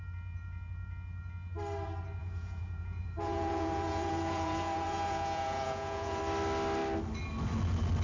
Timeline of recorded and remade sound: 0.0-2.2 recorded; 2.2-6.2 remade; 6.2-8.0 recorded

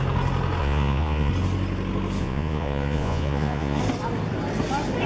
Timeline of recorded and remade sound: 0.0-0.6 recorded; 0.6-1.3 remade; 1.3-2.2 recorded; 2.2-3.8 remade; 3.8-5.1 recorded